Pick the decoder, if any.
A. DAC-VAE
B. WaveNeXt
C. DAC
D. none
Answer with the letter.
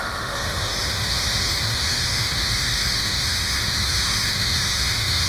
A